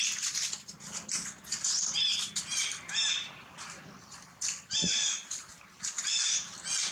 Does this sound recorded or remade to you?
recorded